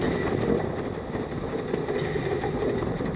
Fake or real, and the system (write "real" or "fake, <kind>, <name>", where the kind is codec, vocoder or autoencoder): real